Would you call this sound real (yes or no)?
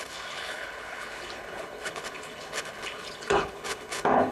no